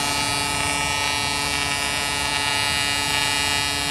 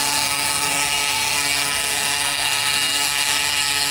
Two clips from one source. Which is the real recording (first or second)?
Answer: first